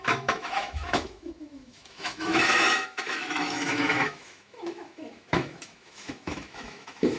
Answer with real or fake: fake